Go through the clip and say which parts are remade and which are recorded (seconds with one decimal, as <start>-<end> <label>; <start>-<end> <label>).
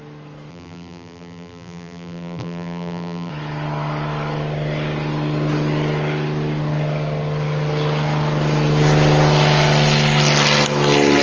0.0-0.5 recorded; 0.5-3.3 remade; 3.3-11.2 recorded